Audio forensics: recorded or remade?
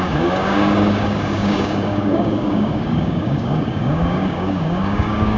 remade